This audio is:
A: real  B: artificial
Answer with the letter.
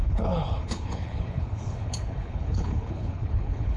B